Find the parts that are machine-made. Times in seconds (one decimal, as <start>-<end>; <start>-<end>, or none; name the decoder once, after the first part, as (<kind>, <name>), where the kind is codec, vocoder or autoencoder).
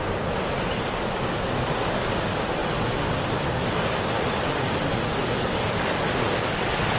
none